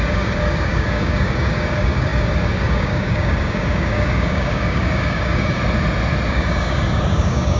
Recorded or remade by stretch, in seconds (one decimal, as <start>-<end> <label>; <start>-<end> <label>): 0.0-5.6 remade; 5.6-6.3 recorded; 6.3-7.6 remade